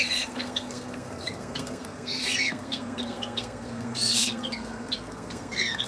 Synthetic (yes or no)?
yes